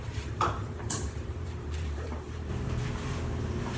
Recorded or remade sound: remade